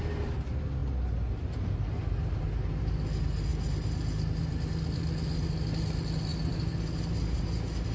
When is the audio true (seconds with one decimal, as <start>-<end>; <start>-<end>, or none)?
0.0-7.9